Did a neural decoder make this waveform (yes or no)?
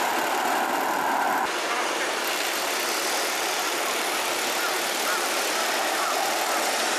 no